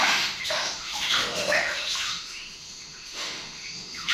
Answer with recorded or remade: remade